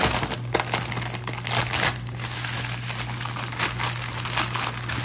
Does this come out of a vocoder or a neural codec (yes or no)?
no